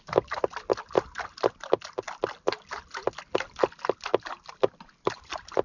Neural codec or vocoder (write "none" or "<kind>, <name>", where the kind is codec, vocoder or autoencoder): none